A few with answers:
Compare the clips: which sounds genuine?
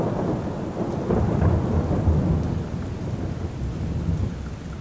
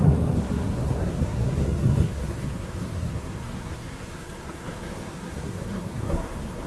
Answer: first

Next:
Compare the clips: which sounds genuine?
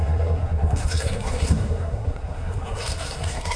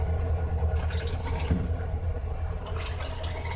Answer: second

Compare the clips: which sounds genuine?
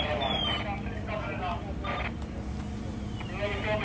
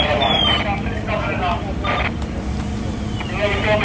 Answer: first